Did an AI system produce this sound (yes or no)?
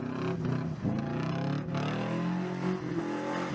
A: no